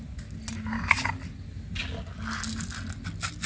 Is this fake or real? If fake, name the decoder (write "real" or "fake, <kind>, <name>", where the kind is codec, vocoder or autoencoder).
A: real